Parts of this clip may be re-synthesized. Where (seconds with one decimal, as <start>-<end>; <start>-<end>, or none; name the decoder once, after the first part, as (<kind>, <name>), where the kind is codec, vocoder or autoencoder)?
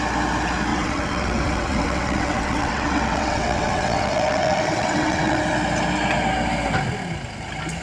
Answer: 0.7-5.4 (vocoder, WaveNeXt)